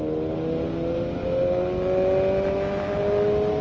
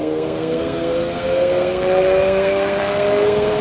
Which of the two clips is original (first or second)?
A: first